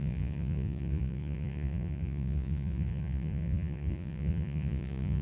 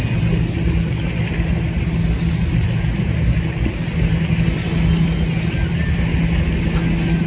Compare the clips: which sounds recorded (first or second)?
second